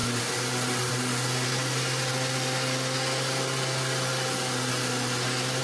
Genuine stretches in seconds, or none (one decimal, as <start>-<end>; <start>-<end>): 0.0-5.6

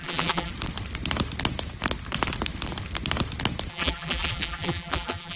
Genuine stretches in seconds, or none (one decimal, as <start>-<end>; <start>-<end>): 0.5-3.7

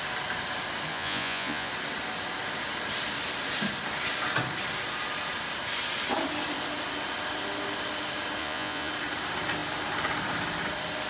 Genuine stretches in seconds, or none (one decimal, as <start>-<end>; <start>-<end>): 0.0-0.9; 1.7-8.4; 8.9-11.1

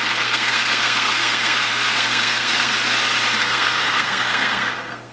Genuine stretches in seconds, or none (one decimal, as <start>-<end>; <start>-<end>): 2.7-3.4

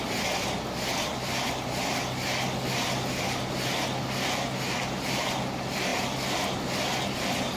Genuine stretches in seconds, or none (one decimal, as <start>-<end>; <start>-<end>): 0.0-7.6

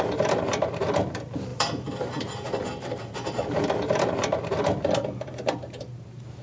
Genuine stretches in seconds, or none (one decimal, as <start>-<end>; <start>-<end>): none

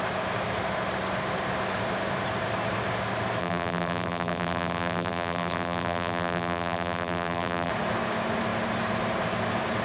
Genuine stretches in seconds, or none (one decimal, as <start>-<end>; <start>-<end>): 0.0-3.4; 7.7-9.8

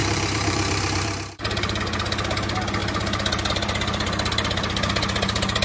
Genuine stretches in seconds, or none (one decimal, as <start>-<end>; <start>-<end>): 1.8-5.6